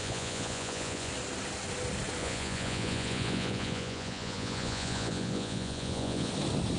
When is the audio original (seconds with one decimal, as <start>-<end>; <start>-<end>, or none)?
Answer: 1.1-2.2; 6.3-6.8